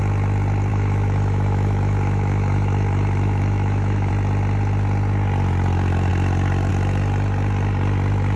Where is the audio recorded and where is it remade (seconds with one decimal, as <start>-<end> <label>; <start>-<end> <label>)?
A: 0.0-0.7 recorded; 0.7-4.1 remade; 4.1-8.4 recorded